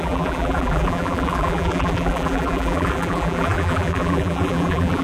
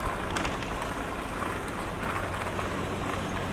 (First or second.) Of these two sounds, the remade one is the first